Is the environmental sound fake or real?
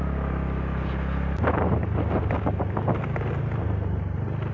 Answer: real